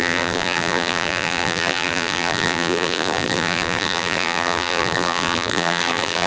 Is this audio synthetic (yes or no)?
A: yes